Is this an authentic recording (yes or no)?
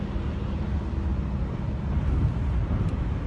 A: yes